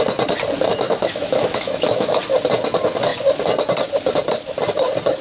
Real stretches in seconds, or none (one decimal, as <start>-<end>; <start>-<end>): 0.0-0.7; 2.2-5.2